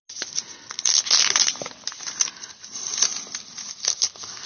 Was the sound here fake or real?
real